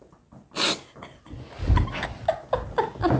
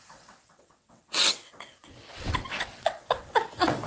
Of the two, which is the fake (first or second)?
second